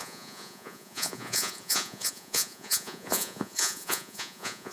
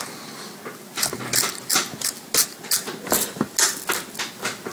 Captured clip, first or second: second